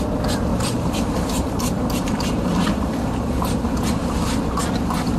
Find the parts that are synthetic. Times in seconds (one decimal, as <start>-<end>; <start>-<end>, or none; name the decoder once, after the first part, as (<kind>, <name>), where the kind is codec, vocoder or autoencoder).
0.5-3.6 (vocoder, BigVGAN v2)